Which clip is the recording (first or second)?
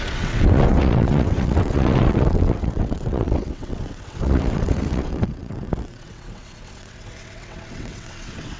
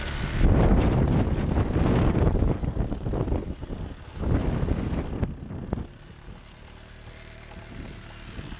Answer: second